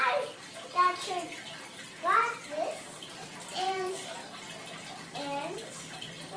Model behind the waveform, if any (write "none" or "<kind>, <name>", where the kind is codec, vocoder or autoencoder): none